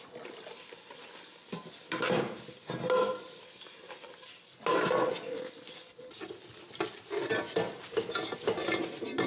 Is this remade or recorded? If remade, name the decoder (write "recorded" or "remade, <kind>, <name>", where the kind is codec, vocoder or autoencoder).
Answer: recorded